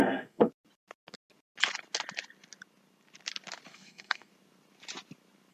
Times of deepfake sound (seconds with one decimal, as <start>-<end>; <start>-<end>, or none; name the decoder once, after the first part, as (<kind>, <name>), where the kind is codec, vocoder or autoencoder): 0.0-0.5 (codec, SNAC); 3.7-4.3